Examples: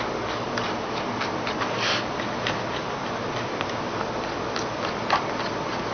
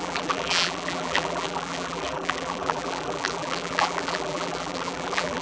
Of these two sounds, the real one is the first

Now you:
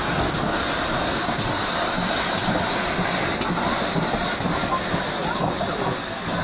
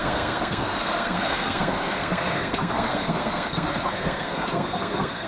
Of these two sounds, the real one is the first